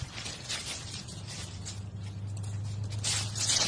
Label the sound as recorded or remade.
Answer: recorded